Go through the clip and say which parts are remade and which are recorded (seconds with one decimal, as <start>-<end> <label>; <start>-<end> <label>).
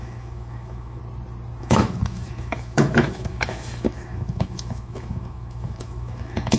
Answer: 0.0-1.0 remade; 1.0-1.6 recorded; 1.6-6.6 remade